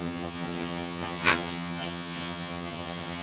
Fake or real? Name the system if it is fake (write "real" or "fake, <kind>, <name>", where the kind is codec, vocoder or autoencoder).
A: fake, vocoder, HiFi-GAN